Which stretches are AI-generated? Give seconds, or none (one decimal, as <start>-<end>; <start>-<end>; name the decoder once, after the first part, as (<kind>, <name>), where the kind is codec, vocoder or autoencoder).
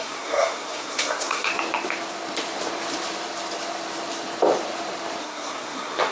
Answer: 0.0-1.5 (codec, SNAC); 5.2-6.1